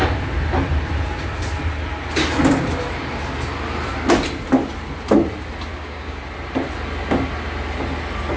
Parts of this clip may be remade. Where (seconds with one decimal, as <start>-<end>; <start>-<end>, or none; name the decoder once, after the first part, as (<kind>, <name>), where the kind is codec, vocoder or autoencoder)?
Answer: 5.7-6.2 (codec, DAC)